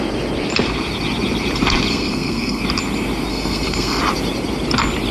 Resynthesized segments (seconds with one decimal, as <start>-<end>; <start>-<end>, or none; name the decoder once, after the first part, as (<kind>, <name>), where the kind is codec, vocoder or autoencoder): 1.9-2.6 (codec, SNAC); 3.3-4.0